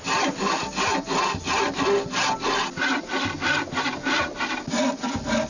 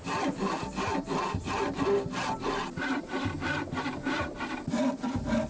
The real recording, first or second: first